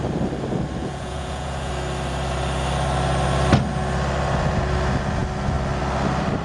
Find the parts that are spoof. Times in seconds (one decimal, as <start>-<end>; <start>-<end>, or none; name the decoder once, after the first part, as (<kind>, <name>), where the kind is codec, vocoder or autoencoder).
0.8-1.7 (vocoder, Vocos)